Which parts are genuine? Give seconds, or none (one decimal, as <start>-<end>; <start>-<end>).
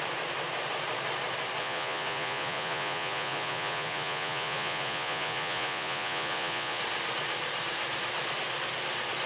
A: 0.0-1.6; 6.8-9.3